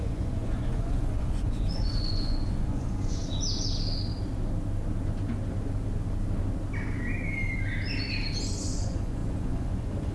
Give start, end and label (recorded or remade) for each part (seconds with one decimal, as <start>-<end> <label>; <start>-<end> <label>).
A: 0.0-3.2 remade; 3.2-8.4 recorded; 8.4-10.1 remade